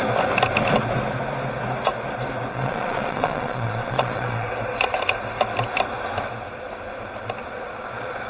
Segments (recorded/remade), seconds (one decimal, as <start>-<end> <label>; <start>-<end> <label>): 0.0-2.5 recorded; 2.5-4.5 remade; 4.5-7.4 recorded; 7.4-8.3 remade